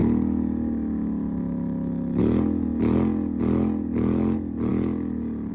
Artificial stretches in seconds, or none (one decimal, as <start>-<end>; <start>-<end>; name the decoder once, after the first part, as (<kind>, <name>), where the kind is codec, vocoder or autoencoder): 0.0-2.2 (autoencoder, DAC-VAE)